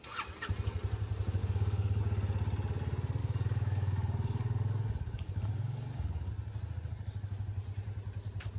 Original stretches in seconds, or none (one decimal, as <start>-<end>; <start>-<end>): 0.0-1.4; 2.0-3.2; 6.3-8.6